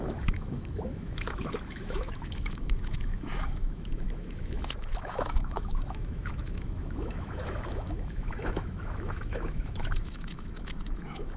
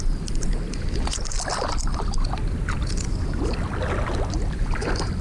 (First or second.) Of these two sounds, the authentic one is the second